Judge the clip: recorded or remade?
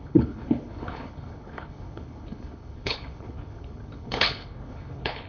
remade